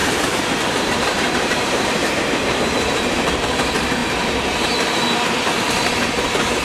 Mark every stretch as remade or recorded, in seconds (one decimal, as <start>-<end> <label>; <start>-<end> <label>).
0.0-0.5 recorded; 0.5-4.0 remade; 4.0-5.6 recorded; 5.6-6.6 remade